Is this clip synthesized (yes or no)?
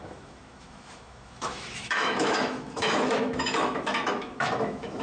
yes